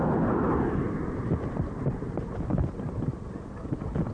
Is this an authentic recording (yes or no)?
yes